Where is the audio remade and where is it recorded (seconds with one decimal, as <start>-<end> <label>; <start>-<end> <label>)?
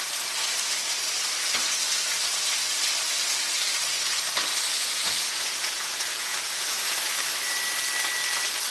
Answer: 0.0-4.7 recorded; 4.7-7.2 remade; 7.2-8.7 recorded